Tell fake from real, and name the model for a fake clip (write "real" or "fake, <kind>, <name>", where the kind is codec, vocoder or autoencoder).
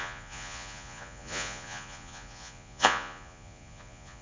fake, vocoder, Vocos